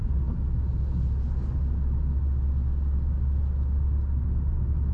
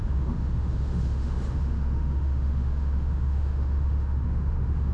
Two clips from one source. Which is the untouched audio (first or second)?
first